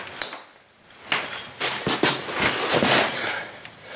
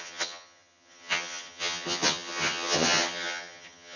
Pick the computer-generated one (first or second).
second